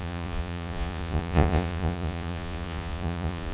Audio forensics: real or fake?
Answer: fake